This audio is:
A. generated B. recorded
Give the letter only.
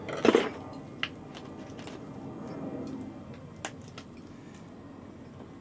B